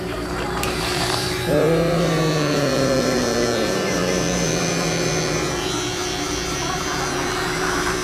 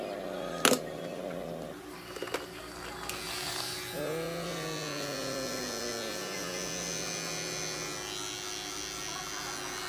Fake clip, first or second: first